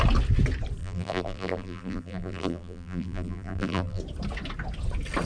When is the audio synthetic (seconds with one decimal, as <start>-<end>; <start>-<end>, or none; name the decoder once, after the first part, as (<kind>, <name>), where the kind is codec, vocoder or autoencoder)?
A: 0.8-4.0 (vocoder, BigVGAN v2)